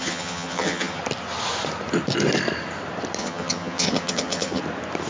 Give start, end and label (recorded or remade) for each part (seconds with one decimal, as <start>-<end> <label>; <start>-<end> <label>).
0.0-1.0 remade; 1.0-3.2 recorded; 3.2-4.6 remade; 4.6-5.1 recorded